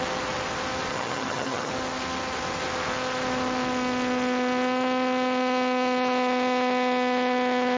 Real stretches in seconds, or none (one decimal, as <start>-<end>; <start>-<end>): 0.0-0.9; 1.7-7.8